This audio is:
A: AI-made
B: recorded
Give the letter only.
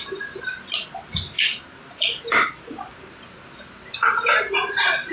B